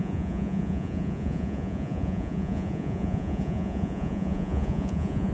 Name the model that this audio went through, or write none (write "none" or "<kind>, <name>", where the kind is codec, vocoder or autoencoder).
vocoder, Vocos